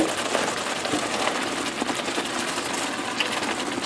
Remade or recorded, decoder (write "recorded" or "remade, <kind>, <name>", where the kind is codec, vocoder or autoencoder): recorded